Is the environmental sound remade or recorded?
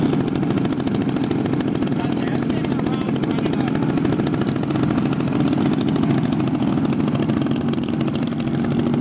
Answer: recorded